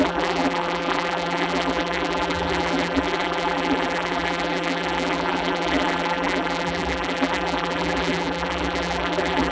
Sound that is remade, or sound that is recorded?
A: remade